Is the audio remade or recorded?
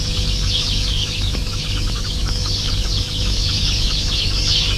remade